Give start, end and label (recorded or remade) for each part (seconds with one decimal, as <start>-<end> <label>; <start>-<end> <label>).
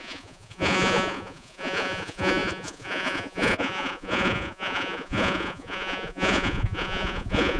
0.0-7.6 remade